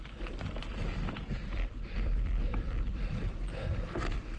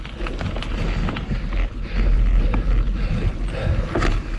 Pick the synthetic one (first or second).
first